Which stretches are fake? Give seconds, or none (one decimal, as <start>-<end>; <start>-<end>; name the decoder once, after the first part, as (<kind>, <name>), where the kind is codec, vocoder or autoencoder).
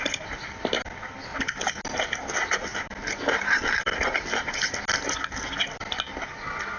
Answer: none